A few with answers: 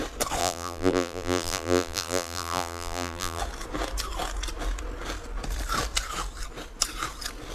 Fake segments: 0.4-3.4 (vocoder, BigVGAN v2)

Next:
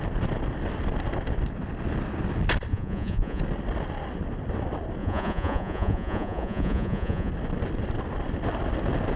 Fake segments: 2.7-3.4 (vocoder, Vocos); 5.0-7.3

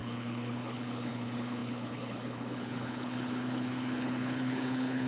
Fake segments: 0.0-5.1 (codec, HILCodec)

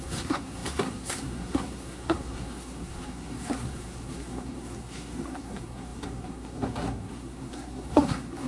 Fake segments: 0.0-8.5 (codec, SNAC)

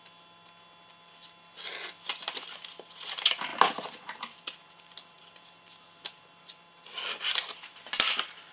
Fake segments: none

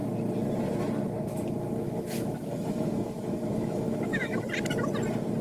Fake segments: 1.3-4.4 (autoencoder, DAC-VAE)

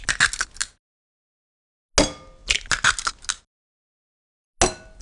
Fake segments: none